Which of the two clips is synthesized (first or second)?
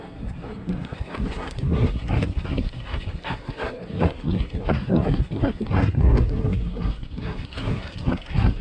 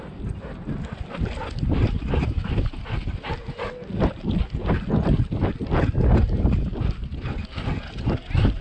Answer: first